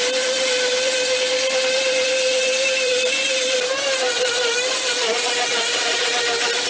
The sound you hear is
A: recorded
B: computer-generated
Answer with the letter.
B